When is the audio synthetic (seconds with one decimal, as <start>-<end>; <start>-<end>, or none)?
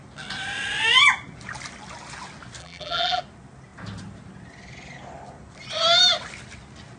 2.6-3.2